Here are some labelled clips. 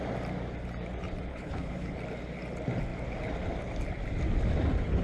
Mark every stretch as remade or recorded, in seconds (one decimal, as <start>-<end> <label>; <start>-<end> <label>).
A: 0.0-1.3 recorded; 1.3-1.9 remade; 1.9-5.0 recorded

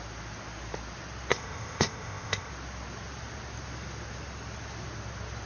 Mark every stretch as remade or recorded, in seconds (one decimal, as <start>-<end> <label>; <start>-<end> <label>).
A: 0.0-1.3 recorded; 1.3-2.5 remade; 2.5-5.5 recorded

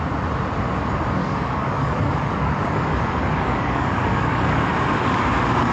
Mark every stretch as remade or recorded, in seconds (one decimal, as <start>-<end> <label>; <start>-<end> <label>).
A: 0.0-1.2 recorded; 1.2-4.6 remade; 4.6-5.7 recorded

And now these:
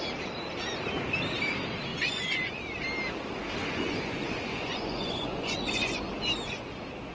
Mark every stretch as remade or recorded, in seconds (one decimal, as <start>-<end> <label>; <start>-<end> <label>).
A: 0.0-1.9 recorded; 1.9-2.6 remade; 2.6-3.6 recorded; 3.6-6.1 remade; 6.1-7.1 recorded

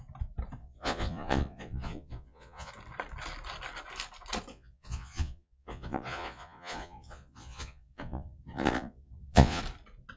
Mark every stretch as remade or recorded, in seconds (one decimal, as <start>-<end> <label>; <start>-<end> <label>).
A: 0.0-0.6 recorded; 0.6-2.7 remade; 2.7-4.5 recorded; 4.5-9.6 remade; 9.6-10.2 recorded